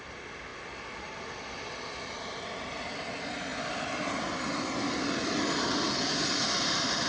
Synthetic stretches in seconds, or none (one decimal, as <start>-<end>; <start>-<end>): none